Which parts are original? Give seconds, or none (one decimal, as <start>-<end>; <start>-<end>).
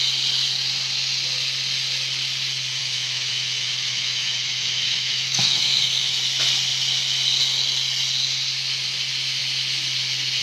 0.0-2.8; 6.2-10.4